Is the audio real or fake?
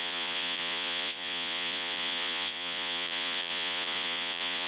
fake